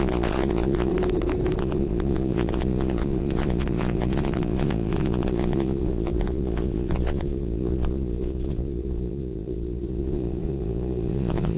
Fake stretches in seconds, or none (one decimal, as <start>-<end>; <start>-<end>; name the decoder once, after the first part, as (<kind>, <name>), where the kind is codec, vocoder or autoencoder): 0.0-0.9 (vocoder, Vocos); 1.6-11.6